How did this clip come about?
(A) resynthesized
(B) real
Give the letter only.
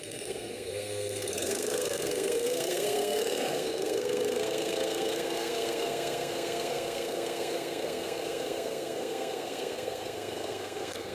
A